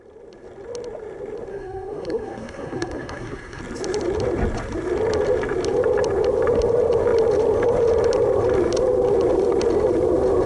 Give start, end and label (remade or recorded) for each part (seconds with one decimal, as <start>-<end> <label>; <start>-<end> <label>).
0.0-1.5 recorded; 1.5-3.6 remade; 3.6-10.5 recorded